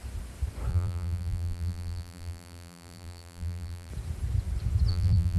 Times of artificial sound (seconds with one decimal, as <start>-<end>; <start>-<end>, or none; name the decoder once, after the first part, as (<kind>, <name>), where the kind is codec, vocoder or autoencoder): 0.7-3.9 (vocoder, BigVGAN v2); 4.9-5.4